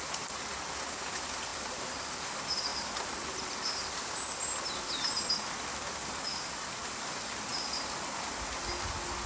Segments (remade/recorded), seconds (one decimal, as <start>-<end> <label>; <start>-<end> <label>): 0.0-1.5 recorded; 1.5-2.1 remade; 2.1-2.7 recorded; 2.7-5.7 remade; 5.7-6.3 recorded; 6.3-6.9 remade; 6.9-7.5 recorded; 7.5-8.2 remade; 8.2-9.3 recorded